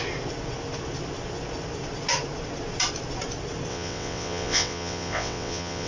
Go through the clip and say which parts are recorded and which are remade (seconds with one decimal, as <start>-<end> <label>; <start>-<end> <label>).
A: 0.0-3.7 recorded; 3.7-5.9 remade